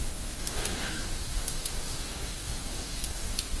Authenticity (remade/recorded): remade